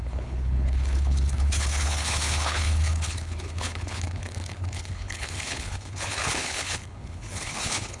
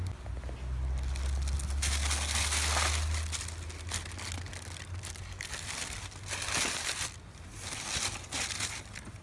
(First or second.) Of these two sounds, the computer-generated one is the first